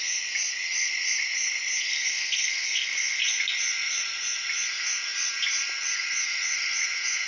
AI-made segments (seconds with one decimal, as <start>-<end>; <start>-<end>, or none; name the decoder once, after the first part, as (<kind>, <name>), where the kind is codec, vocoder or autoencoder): 1.9-3.2 (codec, SNAC)